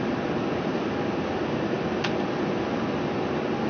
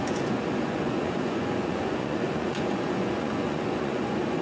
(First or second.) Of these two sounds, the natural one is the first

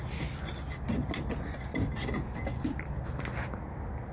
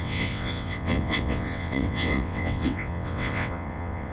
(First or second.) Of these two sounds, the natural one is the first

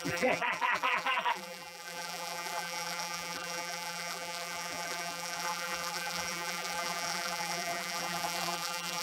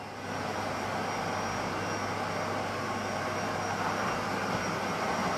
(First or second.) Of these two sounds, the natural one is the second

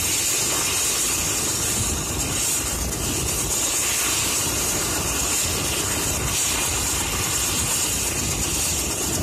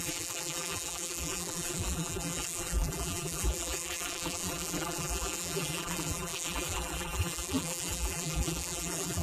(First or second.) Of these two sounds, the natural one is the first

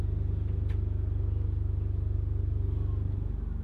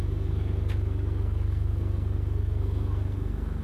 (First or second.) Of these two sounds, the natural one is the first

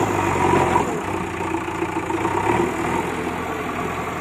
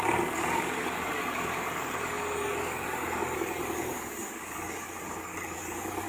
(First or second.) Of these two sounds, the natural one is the first